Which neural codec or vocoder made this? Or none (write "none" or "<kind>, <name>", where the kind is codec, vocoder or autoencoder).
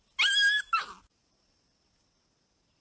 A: none